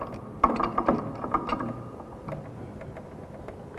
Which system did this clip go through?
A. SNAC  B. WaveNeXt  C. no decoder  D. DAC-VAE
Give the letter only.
C